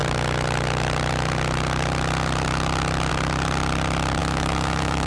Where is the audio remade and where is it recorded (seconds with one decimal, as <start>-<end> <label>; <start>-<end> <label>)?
0.0-4.2 recorded; 4.2-5.1 remade